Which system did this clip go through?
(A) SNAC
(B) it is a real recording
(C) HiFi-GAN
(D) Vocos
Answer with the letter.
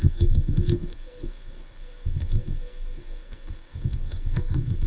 A